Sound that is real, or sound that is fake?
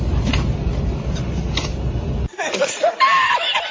real